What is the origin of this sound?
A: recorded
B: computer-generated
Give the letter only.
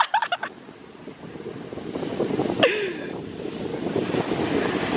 A